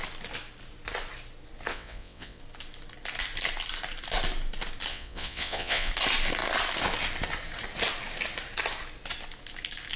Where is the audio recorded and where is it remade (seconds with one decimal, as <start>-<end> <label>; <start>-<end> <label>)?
0.0-1.7 recorded; 1.7-2.4 remade; 2.4-4.9 recorded; 4.9-5.9 remade; 5.9-10.0 recorded